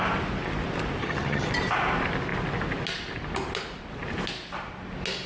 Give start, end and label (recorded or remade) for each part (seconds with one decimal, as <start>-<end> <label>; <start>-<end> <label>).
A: 0.0-1.0 recorded; 1.0-1.5 remade; 1.5-5.3 recorded